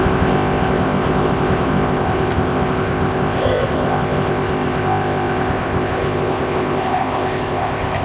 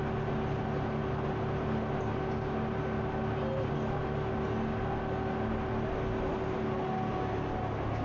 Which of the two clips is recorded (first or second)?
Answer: second